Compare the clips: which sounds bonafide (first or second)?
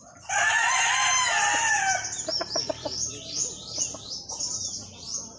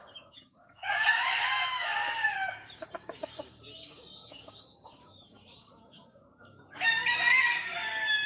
first